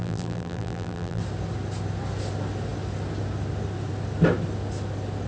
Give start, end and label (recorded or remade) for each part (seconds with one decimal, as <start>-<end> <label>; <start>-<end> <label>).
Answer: 0.0-1.2 remade; 1.2-5.3 recorded